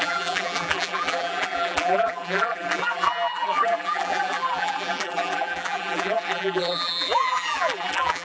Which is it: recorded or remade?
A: remade